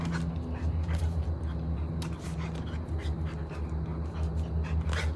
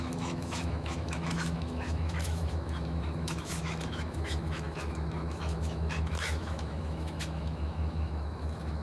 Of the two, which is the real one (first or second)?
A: first